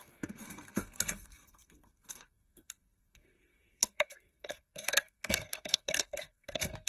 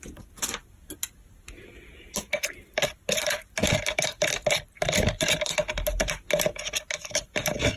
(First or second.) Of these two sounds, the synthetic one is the first